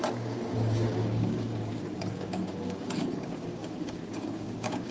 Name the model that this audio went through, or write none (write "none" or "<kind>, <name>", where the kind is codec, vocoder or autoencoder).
codec, DAC